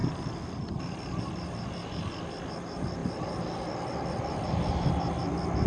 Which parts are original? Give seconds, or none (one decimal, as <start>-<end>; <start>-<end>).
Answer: 0.0-5.7